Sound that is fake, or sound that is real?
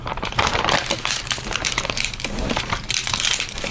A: fake